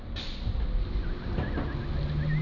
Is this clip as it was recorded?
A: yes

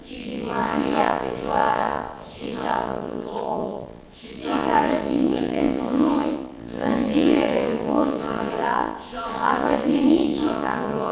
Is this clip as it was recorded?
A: no